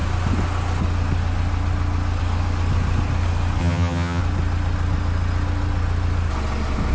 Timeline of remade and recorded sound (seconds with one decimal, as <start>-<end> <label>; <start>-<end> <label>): 0.0-3.6 recorded; 3.6-4.2 remade; 4.2-6.9 recorded